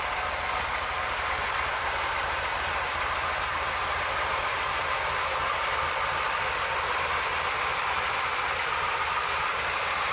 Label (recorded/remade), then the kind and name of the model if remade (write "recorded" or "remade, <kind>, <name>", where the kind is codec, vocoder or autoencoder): recorded